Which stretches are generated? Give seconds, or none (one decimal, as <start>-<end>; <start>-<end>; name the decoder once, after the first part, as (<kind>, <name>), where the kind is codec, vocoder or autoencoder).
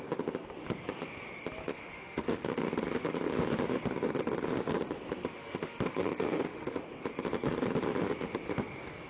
1.7-2.6 (autoencoder, DAC-VAE); 5.2-6.8